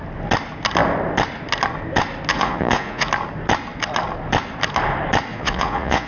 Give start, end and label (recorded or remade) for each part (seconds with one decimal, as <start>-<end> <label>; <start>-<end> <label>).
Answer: 0.0-2.3 recorded; 2.3-3.1 remade; 3.1-5.3 recorded; 5.3-6.1 remade